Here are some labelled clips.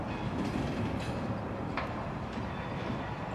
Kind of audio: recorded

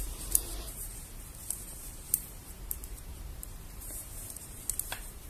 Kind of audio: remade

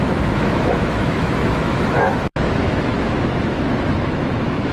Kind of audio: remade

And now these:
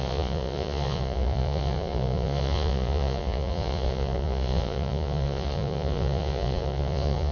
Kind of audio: remade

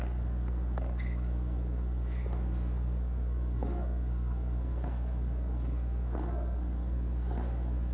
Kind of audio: remade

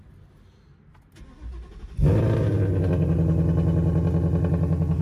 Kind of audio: recorded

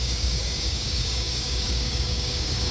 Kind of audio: remade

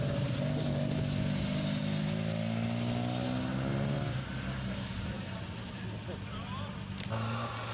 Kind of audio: recorded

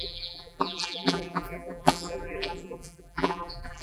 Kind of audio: remade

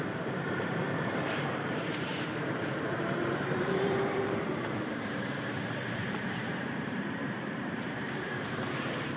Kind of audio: remade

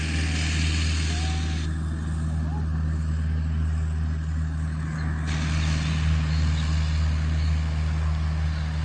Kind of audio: recorded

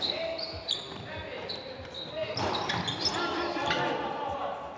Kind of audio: recorded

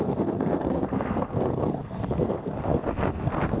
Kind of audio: remade